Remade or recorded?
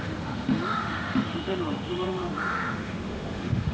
remade